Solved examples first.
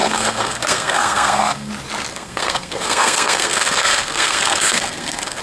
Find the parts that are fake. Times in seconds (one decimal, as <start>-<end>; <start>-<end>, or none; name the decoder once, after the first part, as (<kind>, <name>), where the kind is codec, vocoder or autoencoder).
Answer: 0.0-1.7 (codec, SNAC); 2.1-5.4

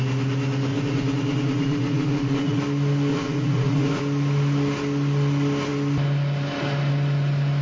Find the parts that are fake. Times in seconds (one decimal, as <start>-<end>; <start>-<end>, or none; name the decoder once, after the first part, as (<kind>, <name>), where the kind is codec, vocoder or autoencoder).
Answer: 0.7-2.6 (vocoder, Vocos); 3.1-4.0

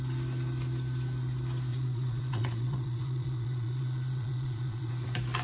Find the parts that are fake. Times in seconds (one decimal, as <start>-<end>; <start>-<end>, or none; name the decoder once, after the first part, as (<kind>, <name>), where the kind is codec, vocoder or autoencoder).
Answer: 1.7-4.9 (vocoder, Vocos)

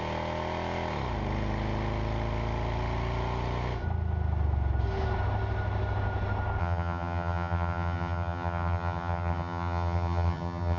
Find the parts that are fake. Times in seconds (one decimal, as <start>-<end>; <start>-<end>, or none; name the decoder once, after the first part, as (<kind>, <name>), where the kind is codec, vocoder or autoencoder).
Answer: 6.6-10.8 (vocoder, HiFi-GAN)

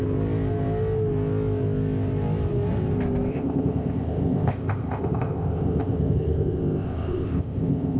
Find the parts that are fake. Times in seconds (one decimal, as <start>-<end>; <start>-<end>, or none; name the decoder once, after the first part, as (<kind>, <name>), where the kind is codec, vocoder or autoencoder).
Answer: 3.3-8.0 (codec, ZipCodec)

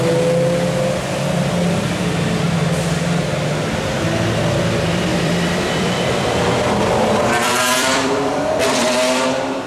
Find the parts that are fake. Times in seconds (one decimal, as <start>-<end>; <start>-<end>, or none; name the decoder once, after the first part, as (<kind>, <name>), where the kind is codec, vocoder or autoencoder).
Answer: 5.1-8.7 (vocoder, BigVGAN v2)